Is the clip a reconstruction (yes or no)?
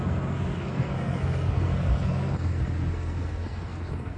yes